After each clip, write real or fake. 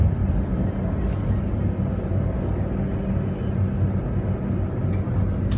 real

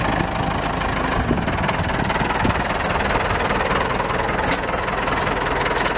real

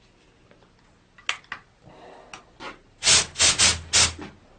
real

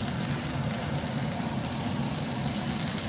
real